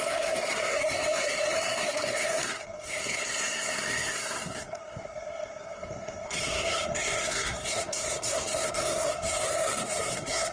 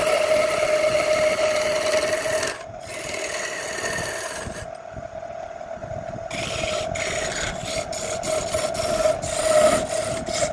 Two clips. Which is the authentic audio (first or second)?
second